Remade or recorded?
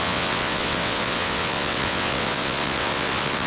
remade